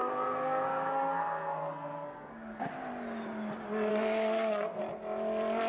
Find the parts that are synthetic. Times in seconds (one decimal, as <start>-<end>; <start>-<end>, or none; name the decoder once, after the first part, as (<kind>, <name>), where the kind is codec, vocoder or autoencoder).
0.0-2.7 (codec, SNAC); 3.9-4.8